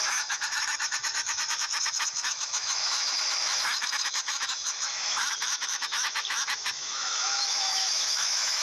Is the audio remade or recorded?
remade